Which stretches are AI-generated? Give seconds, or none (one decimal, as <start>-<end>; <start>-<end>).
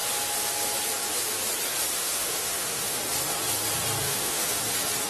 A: 1.9-3.0; 4.0-4.6